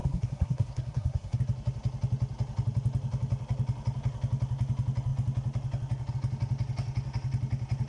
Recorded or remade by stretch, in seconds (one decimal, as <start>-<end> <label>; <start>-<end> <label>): 0.0-1.4 remade; 1.4-7.9 recorded